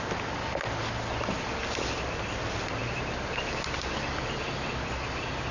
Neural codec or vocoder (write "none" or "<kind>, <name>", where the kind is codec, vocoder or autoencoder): none